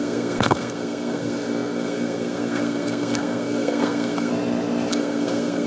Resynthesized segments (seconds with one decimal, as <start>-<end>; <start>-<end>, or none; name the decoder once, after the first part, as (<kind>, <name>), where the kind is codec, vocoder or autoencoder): 0.0-4.3 (codec, SNAC); 4.9-5.7